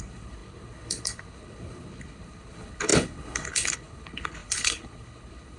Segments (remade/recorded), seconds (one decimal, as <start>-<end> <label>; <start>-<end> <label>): 0.0-5.6 remade